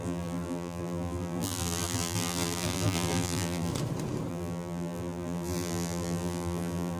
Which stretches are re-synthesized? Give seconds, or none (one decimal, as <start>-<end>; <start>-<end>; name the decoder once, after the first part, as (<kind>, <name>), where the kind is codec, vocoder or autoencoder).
0.0-3.7 (vocoder, BigVGAN v2); 4.3-7.0